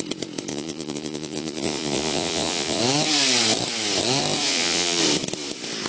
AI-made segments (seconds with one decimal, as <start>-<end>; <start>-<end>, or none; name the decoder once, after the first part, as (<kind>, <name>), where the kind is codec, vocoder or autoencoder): 0.5-2.8 (vocoder, Vocos); 4.4-5.0